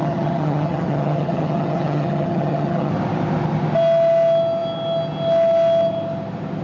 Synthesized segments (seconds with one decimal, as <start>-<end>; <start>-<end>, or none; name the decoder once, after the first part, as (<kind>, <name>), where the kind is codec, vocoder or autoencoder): 0.0-2.9 (vocoder, HiFi-GAN)